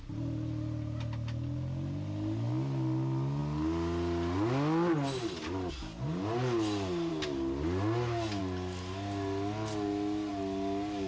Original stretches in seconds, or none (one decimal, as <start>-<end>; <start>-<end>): 0.0-11.1